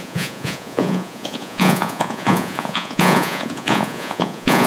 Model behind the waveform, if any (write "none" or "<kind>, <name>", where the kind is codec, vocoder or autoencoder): vocoder, Vocos